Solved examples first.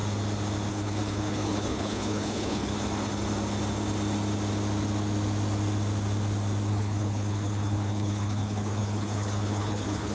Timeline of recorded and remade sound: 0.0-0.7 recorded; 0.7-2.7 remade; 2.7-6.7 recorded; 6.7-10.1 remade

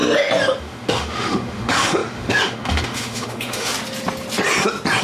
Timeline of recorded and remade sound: 0.0-0.6 recorded; 0.6-3.7 remade; 3.7-5.0 recorded

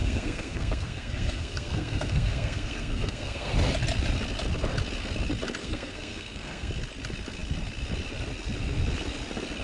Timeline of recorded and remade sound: 0.0-3.5 remade; 3.5-5.6 recorded; 5.6-6.7 remade; 6.7-9.6 recorded

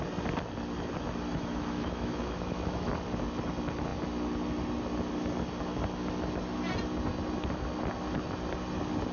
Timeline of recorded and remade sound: 0.0-1.3 recorded; 1.3-2.9 remade; 2.9-9.1 recorded

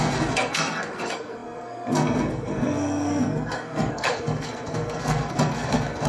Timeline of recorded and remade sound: 0.0-6.1 remade